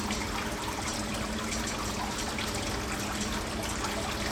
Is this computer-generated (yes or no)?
no